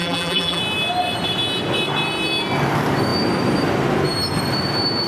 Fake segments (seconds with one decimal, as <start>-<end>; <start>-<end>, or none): 0.0-0.6